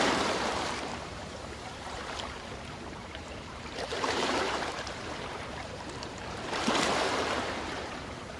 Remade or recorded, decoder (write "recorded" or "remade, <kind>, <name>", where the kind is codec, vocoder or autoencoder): remade, vocoder, BigVGAN v2